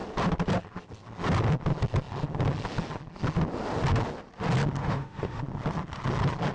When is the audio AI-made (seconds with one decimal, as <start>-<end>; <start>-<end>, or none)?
4.8-5.4